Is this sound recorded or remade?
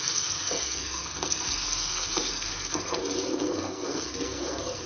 remade